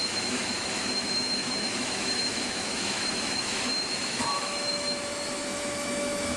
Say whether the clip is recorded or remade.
remade